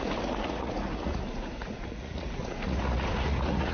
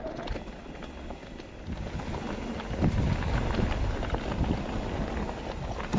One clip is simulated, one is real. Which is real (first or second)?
second